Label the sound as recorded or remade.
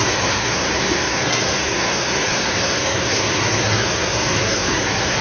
remade